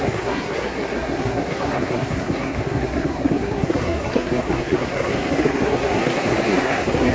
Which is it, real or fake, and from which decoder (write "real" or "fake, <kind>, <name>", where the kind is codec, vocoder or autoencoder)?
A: fake, codec, SNAC